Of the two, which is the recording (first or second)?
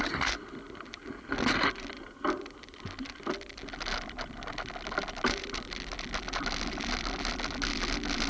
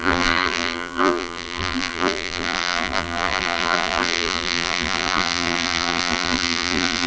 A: first